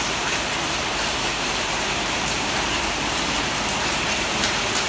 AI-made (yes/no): yes